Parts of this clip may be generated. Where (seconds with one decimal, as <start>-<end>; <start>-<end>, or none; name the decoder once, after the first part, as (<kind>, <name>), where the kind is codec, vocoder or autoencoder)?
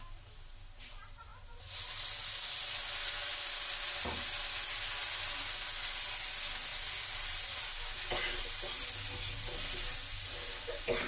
none